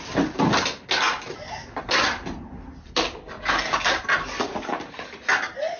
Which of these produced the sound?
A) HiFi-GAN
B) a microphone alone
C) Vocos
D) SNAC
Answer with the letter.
B